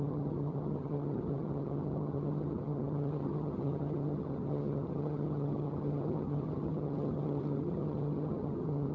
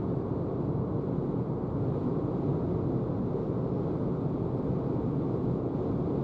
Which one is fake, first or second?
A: first